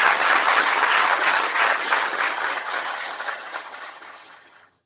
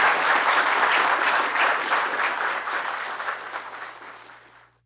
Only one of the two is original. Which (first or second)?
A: second